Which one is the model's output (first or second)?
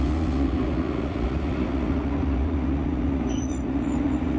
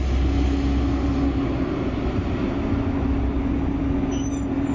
first